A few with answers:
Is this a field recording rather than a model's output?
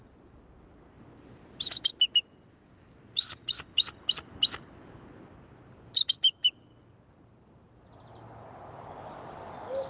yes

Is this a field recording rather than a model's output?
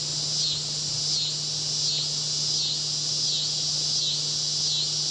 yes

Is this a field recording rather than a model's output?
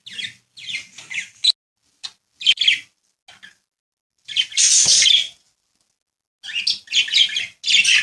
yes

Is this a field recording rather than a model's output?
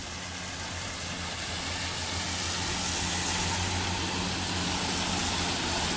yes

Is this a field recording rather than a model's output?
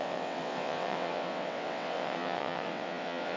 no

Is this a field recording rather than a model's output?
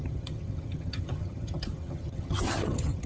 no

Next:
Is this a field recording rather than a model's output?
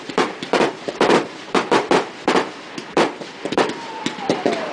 no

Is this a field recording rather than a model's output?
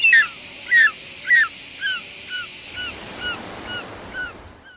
no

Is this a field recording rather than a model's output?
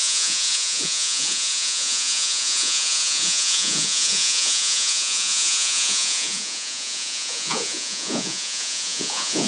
no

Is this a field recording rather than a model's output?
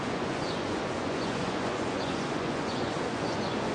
no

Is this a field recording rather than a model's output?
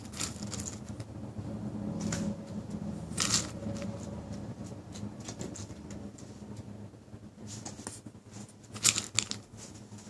yes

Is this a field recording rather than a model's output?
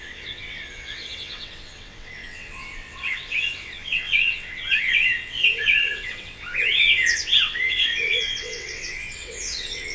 no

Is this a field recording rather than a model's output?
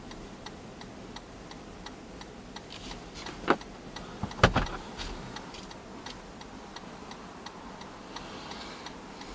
yes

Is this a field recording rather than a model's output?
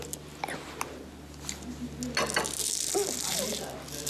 yes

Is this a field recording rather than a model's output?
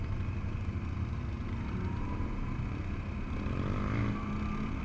yes